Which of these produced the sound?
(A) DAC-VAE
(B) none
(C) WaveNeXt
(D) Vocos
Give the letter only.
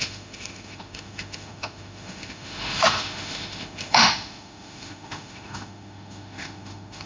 A